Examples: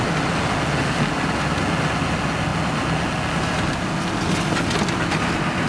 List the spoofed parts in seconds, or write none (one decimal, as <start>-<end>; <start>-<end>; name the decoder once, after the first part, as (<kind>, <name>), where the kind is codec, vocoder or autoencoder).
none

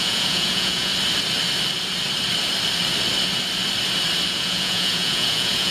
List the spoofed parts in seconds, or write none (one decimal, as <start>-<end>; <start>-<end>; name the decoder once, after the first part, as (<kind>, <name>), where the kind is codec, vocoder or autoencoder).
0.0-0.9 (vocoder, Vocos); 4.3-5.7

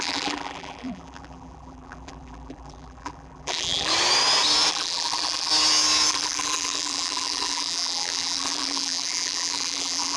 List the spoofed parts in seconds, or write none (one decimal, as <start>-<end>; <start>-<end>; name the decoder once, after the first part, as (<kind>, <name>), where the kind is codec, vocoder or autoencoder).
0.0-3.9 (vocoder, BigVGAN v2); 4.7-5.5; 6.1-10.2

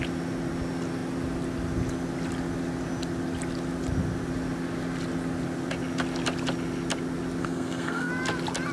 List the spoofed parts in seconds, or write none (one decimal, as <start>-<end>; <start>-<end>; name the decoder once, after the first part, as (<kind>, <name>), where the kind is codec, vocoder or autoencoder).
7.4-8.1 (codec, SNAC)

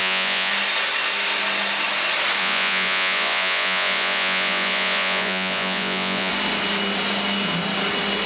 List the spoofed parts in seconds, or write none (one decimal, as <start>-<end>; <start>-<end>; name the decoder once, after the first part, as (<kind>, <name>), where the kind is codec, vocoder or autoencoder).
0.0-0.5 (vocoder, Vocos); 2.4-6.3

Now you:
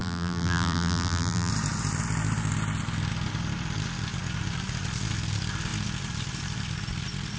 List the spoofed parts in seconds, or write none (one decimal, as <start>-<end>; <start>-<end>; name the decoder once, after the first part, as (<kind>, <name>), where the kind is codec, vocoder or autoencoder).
0.0-1.5 (vocoder, BigVGAN v2)

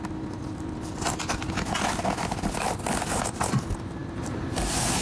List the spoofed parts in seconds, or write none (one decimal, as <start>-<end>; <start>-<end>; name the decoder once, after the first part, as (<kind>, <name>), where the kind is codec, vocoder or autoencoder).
none

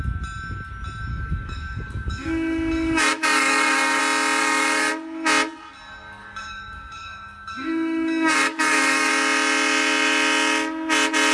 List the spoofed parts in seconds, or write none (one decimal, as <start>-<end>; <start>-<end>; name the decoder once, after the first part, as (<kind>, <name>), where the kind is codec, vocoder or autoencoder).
1.1-4.0 (codec, DAC); 4.4-4.9; 6.2-9.1